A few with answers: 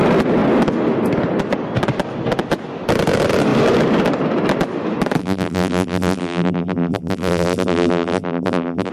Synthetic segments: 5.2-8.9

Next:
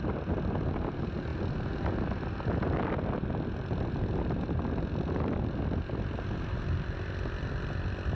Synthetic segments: none

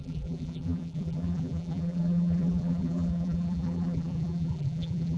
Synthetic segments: 0.0-5.2

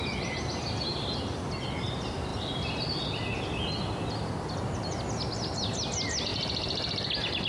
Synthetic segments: none

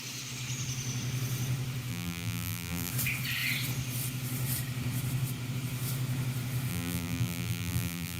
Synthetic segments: 1.9-2.9; 6.7-8.2

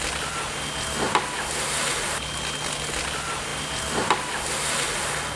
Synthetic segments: 3.5-4.5

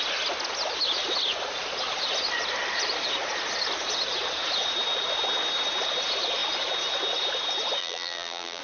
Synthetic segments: 7.8-8.6